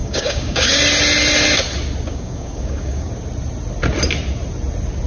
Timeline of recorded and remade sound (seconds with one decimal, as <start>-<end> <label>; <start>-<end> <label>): 0.0-0.8 remade; 0.8-2.1 recorded; 2.1-3.1 remade; 3.1-5.1 recorded